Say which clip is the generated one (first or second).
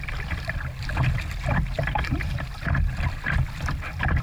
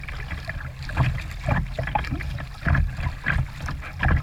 first